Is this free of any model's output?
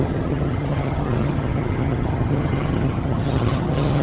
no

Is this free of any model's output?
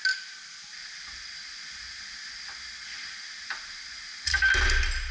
yes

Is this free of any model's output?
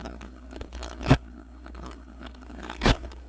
no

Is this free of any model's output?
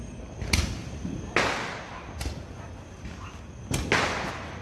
yes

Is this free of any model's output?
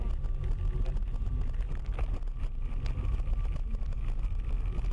yes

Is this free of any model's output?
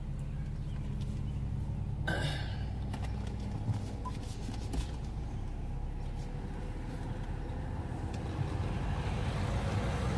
yes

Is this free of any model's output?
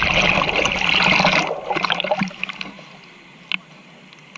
yes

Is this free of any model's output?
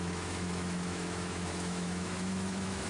no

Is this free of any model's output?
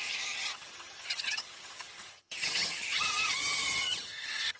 no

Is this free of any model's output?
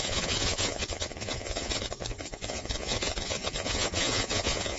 no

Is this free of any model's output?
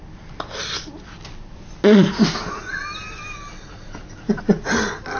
yes